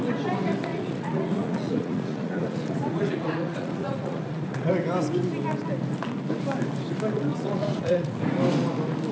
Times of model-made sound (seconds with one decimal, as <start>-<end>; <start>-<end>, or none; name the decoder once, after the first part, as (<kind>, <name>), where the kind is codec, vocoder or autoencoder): 0.7-4.7 (vocoder, Vocos); 7.3-8.2